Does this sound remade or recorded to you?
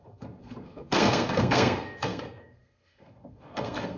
remade